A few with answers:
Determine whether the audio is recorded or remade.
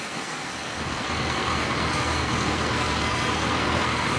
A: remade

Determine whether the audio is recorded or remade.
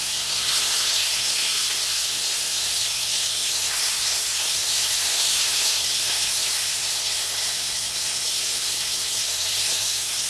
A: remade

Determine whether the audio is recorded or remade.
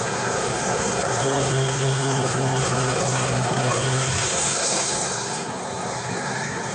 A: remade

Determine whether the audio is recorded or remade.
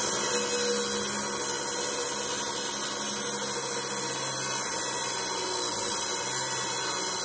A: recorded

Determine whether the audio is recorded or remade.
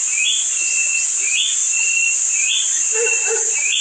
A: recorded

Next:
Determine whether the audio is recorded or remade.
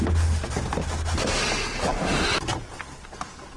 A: recorded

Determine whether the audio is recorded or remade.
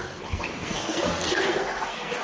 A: remade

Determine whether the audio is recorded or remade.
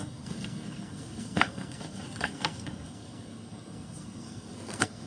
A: remade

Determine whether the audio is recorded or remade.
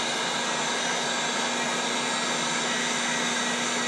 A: recorded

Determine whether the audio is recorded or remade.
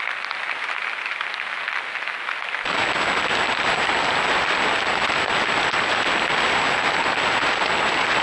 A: recorded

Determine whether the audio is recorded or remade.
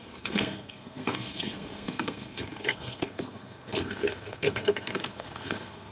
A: remade